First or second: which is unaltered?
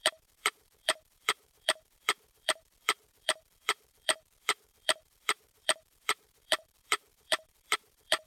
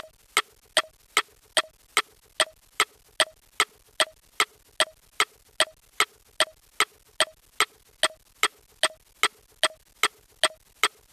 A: second